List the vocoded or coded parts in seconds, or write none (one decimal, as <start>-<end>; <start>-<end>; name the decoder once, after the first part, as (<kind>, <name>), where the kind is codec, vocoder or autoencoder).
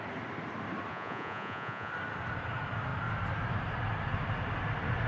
0.9-1.9 (vocoder, Vocos)